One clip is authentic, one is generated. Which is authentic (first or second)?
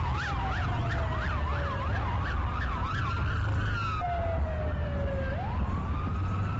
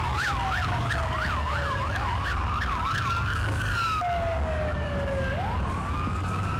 first